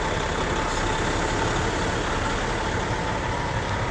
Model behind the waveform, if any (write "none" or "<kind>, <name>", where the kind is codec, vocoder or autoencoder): none